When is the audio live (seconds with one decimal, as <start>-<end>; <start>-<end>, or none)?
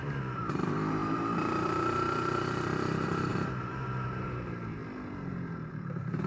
4.8-5.7